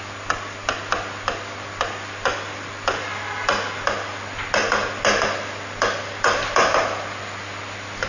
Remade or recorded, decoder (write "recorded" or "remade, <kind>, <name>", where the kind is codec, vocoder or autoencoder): recorded